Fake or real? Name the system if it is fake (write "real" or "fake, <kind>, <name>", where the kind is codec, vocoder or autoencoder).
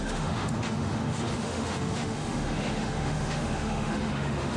fake, autoencoder, DAC-VAE